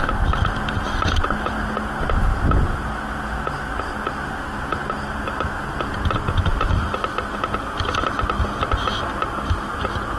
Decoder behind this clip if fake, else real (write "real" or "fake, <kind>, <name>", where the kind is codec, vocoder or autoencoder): real